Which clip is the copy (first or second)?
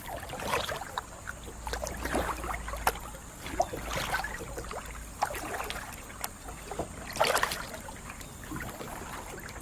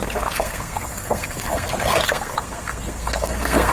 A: second